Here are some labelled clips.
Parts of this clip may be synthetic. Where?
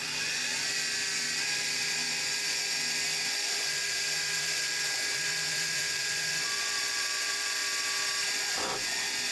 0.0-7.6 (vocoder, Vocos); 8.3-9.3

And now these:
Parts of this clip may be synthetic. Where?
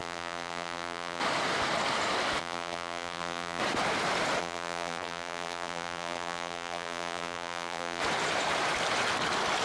0.0-1.2 (vocoder, BigVGAN v2); 2.4-3.6; 4.4-8.0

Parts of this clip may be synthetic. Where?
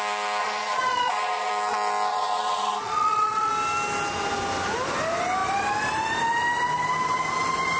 0.4-1.5 (vocoder, Vocos); 2.1-3.5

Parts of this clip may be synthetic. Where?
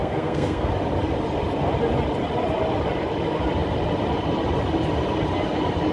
0.0-0.7 (codec, SNAC)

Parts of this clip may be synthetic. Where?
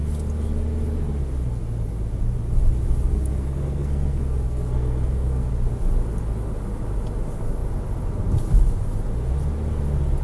3.1-5.5 (codec, SNAC)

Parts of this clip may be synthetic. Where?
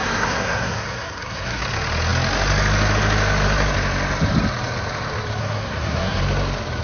0.0-1.6 (codec, SNAC); 5.4-6.2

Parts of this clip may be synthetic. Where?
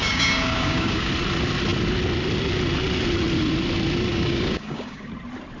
0.0-1.1 (codec, DAC); 4.1-5.1